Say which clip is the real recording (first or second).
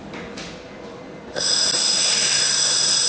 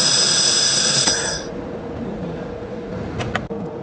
first